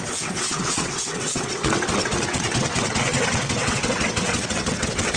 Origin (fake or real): fake